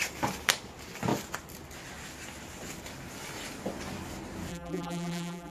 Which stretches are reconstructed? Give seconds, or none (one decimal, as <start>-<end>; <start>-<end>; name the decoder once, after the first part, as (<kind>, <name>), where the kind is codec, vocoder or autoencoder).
4.5-5.5 (vocoder, BigVGAN v2)